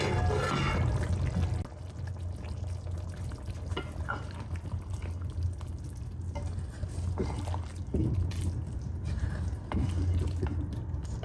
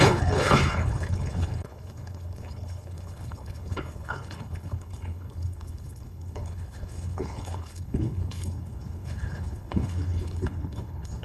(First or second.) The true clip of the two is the first